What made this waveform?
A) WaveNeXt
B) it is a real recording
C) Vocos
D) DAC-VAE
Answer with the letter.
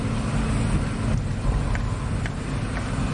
B